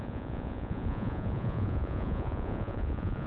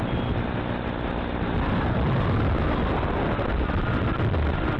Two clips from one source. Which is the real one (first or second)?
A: second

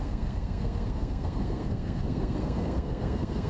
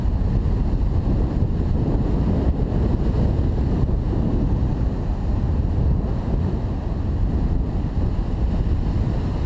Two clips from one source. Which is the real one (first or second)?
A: second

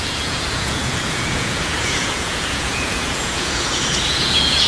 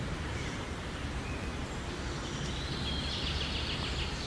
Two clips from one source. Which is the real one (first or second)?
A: second